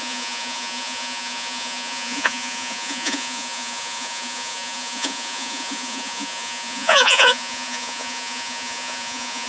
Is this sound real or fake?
fake